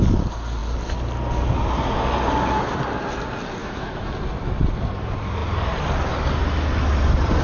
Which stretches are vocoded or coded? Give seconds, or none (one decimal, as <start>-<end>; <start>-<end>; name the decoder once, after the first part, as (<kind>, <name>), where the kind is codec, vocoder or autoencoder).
3.6-4.1 (autoencoder, DAC-VAE)